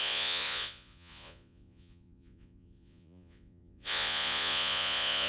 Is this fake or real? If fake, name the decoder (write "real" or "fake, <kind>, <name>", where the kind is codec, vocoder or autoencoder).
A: fake, vocoder, Vocos